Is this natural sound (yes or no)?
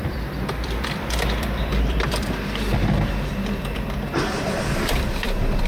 no